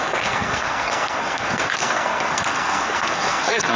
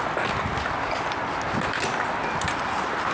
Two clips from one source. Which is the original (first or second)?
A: second